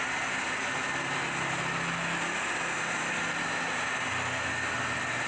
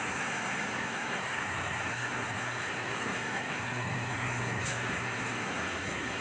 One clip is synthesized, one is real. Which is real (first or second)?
first